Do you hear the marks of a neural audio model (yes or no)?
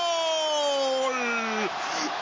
no